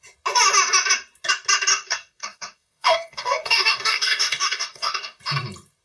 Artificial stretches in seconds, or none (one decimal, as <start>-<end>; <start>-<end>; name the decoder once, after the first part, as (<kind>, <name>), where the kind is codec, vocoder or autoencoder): 1.7-5.2 (codec, DAC)